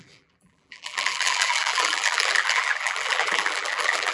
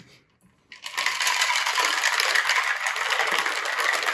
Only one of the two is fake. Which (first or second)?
first